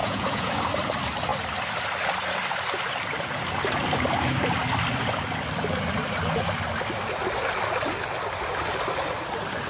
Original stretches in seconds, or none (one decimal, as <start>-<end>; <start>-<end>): 0.5-9.7